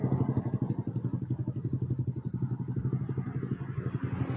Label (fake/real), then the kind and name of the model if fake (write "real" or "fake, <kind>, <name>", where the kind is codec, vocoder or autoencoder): real